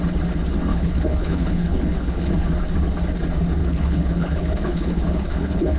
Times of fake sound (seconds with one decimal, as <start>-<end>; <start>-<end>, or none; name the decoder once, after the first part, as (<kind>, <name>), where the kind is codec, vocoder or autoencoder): 0.7-2.3 (codec, HILCodec); 3.6-5.8